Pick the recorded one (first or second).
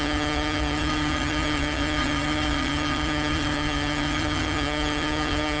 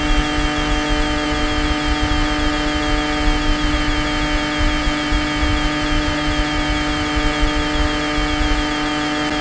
second